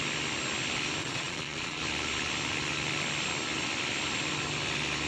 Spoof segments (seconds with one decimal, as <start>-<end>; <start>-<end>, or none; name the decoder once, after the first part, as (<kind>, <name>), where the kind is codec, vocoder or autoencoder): 1.0-1.8 (vocoder, Vocos)